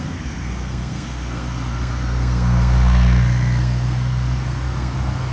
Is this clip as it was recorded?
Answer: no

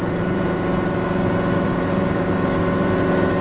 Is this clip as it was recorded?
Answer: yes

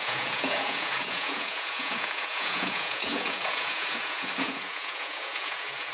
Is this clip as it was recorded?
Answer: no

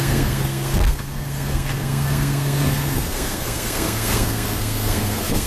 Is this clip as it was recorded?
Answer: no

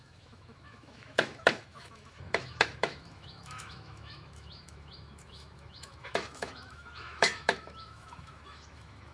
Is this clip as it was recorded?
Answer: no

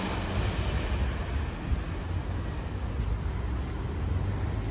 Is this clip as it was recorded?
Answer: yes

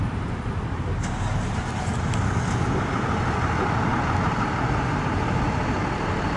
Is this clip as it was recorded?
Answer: yes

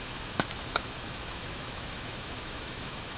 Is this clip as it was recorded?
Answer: no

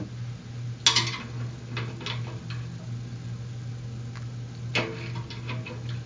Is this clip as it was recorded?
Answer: yes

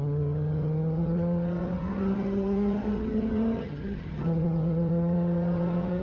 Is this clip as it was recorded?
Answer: no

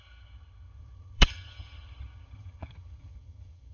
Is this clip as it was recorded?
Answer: no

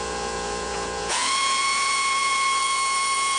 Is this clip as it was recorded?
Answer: no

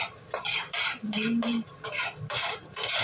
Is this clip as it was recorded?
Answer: no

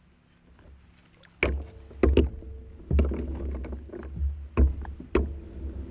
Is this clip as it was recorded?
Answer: yes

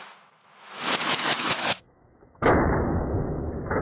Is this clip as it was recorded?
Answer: no